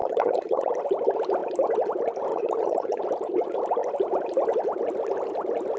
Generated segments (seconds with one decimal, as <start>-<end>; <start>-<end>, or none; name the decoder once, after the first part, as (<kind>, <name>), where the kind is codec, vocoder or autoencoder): 0.0-0.7 (vocoder, HiFi-GAN); 2.3-3.0